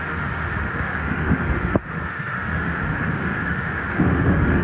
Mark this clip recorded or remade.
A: remade